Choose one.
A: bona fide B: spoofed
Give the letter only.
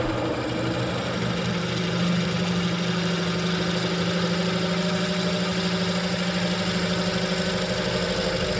A